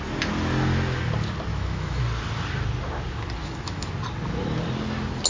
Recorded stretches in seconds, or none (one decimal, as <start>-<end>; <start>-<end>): 0.0-1.5; 2.0-3.4; 3.9-5.3